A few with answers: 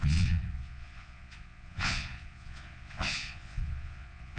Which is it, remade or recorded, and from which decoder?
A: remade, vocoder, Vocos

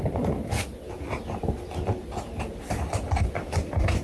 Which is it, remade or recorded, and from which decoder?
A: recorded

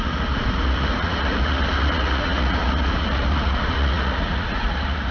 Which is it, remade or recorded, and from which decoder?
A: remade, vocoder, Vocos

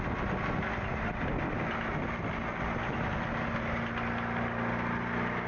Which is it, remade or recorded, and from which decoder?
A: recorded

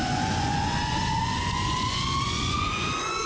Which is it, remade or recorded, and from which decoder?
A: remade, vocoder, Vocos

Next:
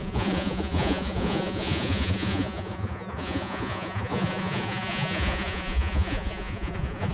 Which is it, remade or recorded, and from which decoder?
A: remade, vocoder, Vocos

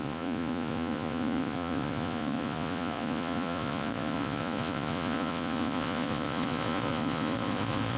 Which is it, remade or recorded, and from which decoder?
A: remade, vocoder, Vocos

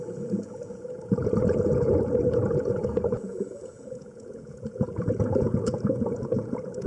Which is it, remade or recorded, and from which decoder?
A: remade, vocoder, Vocos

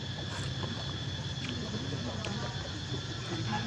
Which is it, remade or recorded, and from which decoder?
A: recorded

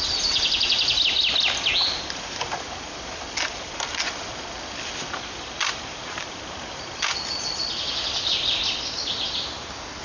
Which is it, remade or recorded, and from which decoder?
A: recorded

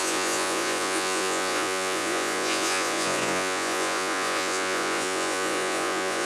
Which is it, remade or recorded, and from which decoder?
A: remade, vocoder, Vocos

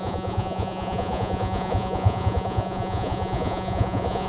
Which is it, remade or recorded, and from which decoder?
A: remade, vocoder, Vocos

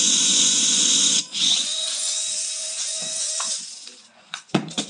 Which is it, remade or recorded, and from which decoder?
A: remade, vocoder, Vocos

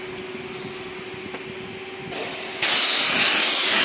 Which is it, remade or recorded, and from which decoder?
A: recorded